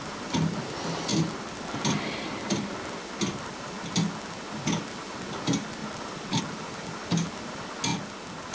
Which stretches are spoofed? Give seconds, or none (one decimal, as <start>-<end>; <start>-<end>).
5.8-6.4